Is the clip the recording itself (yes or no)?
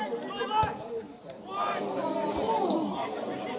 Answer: yes